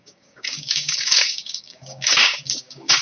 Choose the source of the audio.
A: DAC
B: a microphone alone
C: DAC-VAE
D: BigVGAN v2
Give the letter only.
A